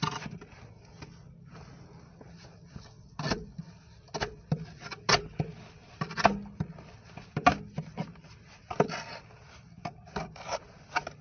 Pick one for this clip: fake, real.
real